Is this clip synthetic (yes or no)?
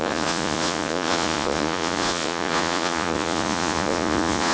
yes